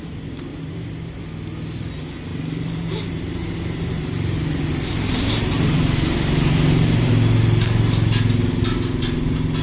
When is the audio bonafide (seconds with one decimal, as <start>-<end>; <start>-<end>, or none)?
0.0-0.5; 1.2-2.3; 7.1-9.6